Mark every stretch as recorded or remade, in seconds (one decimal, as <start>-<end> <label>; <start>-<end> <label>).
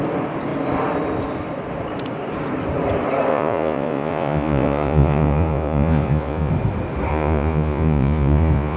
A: 0.0-3.3 recorded; 3.3-6.5 remade; 6.5-7.1 recorded; 7.1-8.8 remade